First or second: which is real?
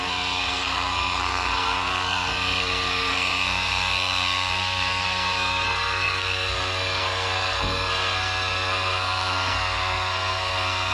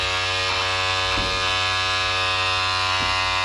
second